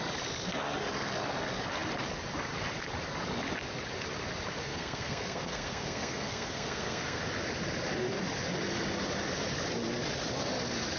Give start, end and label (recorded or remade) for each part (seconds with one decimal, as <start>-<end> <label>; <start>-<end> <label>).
0.0-4.6 recorded; 4.6-7.2 remade; 7.2-11.0 recorded